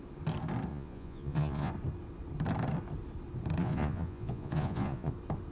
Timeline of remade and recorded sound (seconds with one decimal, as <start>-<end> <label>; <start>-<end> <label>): 0.0-0.7 recorded; 0.7-1.7 remade; 1.7-3.6 recorded; 3.6-5.1 remade; 5.1-5.5 recorded